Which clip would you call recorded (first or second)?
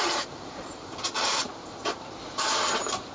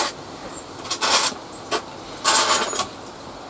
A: second